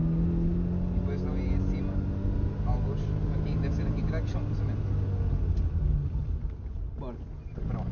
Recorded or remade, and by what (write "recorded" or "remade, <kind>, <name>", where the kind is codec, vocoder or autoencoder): recorded